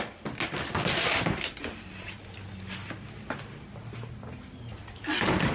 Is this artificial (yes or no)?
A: no